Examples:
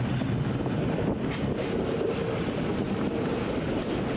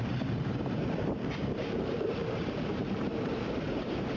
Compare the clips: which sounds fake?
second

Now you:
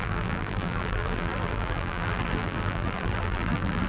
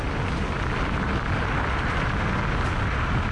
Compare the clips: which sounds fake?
first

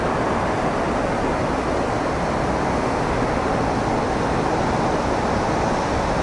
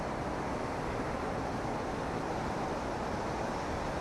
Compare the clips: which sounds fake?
second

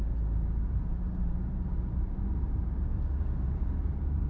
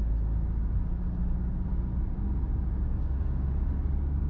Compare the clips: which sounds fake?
first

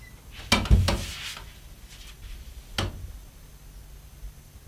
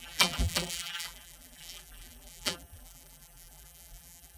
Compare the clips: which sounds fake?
second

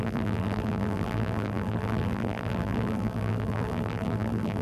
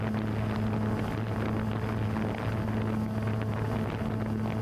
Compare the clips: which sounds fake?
first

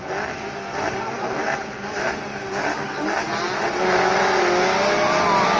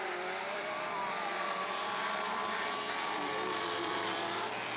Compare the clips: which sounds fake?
second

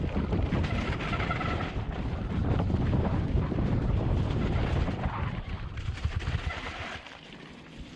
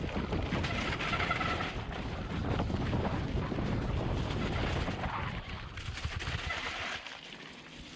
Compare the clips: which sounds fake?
first